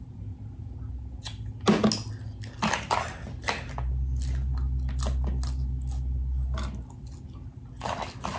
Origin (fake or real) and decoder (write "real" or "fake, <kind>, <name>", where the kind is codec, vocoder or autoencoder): real